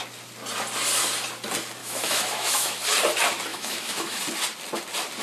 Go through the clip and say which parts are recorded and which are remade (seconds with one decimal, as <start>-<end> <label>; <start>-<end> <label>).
0.0-1.8 recorded; 1.8-2.8 remade; 2.8-3.5 recorded; 3.5-4.2 remade; 4.2-5.2 recorded